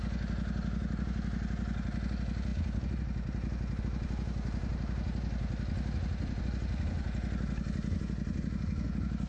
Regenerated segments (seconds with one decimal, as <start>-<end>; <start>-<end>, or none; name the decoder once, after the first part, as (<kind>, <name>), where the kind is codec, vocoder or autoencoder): none